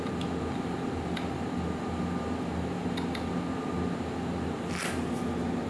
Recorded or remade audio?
recorded